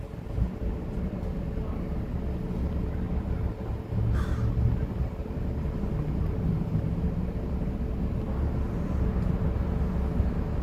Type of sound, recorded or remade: recorded